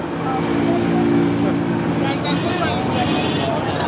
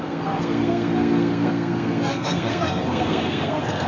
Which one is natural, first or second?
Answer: first